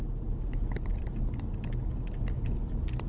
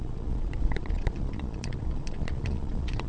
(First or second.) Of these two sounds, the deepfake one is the second